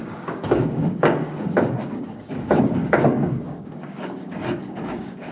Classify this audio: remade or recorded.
remade